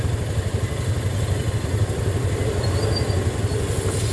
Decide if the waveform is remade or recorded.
recorded